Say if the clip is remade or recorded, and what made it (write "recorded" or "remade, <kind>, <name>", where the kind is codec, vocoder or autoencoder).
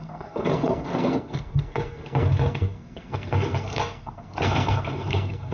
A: remade, codec, SNAC